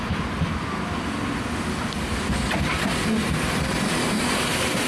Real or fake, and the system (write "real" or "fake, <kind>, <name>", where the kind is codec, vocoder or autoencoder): real